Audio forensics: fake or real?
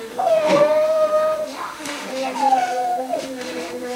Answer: fake